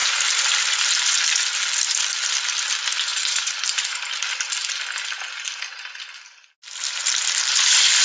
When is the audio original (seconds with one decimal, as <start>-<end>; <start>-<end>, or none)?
0.0-3.1; 3.6-8.0